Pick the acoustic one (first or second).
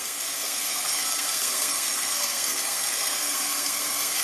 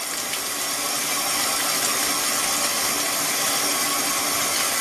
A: second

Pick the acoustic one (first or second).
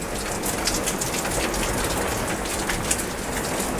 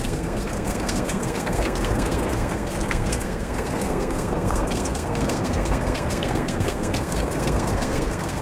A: first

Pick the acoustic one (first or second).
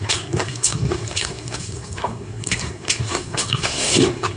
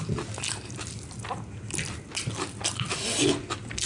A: second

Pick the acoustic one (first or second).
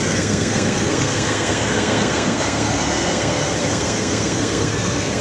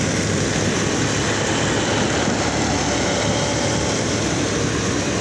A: second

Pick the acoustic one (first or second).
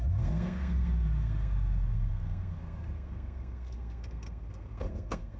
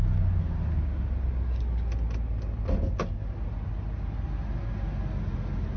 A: second